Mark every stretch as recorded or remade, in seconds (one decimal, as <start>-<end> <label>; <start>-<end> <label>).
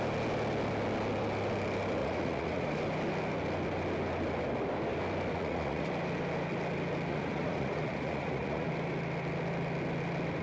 0.0-2.0 recorded; 2.0-2.8 remade; 2.8-5.3 recorded; 5.3-5.9 remade; 5.9-7.1 recorded; 7.1-8.7 remade; 8.7-10.4 recorded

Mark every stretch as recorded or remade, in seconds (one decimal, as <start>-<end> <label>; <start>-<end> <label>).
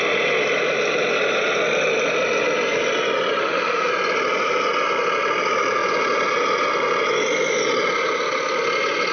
0.0-3.4 recorded; 3.4-3.9 remade; 3.9-9.1 recorded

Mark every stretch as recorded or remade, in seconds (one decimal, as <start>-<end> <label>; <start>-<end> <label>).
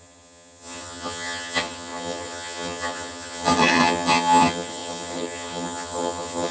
0.0-6.5 remade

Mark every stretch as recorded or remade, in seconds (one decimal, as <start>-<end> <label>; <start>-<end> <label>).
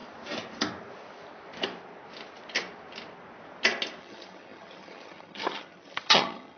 0.0-4.0 recorded; 4.0-6.6 remade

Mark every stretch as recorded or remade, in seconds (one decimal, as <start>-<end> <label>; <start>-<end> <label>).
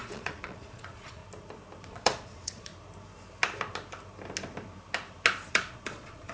0.0-1.2 remade; 1.2-1.8 recorded; 1.8-2.7 remade; 2.7-5.5 recorded; 5.5-6.3 remade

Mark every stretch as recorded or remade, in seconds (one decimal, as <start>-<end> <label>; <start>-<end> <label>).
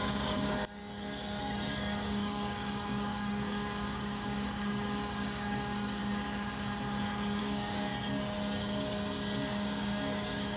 0.0-0.8 remade; 0.8-1.4 recorded; 1.4-6.0 remade; 6.0-7.4 recorded; 7.4-7.9 remade; 7.9-9.5 recorded; 9.5-10.6 remade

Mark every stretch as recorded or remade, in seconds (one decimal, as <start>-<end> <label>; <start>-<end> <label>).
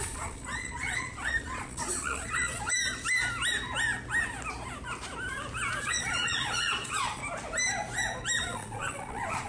0.0-2.7 remade; 2.7-5.8 recorded; 5.8-7.2 remade; 7.2-8.4 recorded; 8.4-9.5 remade